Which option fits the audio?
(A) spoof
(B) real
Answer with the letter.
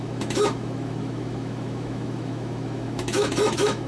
A